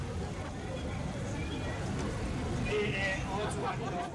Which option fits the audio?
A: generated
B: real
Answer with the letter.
B